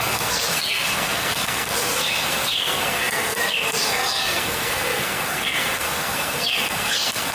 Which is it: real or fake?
fake